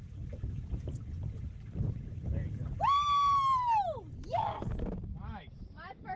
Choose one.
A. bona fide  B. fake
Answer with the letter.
A